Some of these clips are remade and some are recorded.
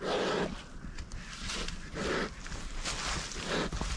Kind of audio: recorded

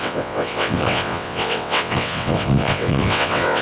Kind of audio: remade